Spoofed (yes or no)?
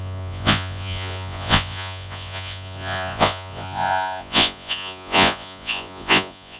yes